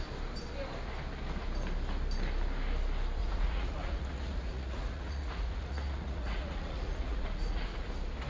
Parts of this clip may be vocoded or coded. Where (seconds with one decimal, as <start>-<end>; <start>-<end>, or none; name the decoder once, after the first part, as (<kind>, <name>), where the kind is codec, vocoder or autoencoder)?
3.2-7.9 (vocoder, Vocos)